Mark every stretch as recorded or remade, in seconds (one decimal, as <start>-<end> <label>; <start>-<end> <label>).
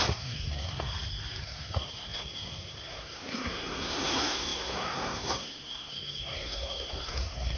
0.0-0.9 remade; 0.9-1.4 recorded; 1.4-7.6 remade